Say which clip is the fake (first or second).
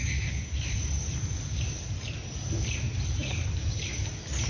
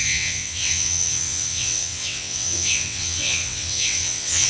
second